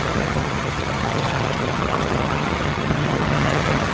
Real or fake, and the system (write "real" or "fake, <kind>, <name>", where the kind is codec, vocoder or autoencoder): fake, vocoder, HiFi-GAN